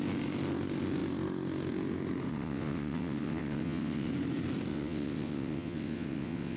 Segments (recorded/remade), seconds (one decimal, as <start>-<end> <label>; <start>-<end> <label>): 0.0-2.3 recorded; 2.3-4.1 remade; 4.1-4.7 recorded; 4.7-6.6 remade